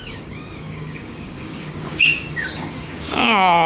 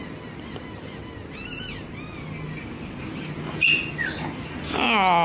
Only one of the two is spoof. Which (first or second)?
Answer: first